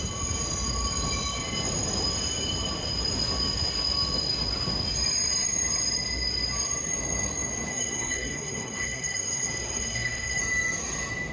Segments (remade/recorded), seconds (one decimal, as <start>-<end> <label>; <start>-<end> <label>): 0.0-7.7 recorded; 7.7-10.4 remade; 10.4-11.3 recorded